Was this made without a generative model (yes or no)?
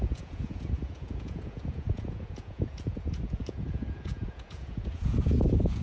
no